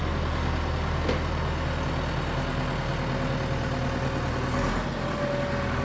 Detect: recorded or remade recorded